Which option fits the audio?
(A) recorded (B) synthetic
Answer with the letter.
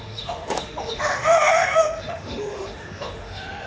B